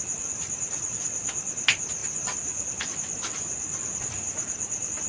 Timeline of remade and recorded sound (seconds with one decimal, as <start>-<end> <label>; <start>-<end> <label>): 0.0-5.1 recorded

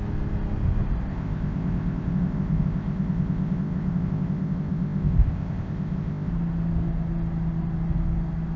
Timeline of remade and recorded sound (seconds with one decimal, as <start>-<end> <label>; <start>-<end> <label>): 0.0-1.1 recorded; 1.1-6.3 remade; 6.3-8.6 recorded

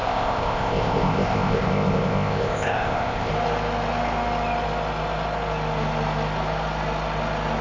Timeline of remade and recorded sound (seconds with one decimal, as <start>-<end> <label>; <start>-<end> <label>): 0.0-3.3 remade; 3.3-7.6 recorded

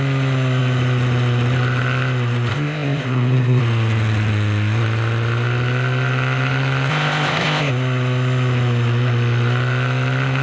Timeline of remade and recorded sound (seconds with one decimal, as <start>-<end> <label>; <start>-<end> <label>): 0.0-2.5 recorded; 2.5-3.6 remade; 3.6-6.9 recorded; 6.9-7.7 remade; 7.7-10.4 recorded

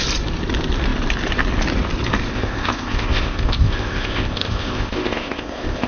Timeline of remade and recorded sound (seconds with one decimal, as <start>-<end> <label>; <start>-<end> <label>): 0.0-2.3 recorded; 2.3-5.9 remade